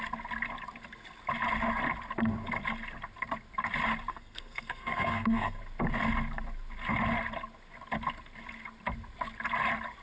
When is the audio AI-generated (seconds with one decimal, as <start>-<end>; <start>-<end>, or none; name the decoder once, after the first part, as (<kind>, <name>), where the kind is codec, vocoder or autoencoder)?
4.1-5.6 (codec, SNAC)